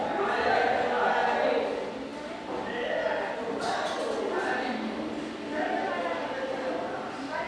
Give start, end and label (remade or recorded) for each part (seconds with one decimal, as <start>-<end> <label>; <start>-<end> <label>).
0.0-7.5 recorded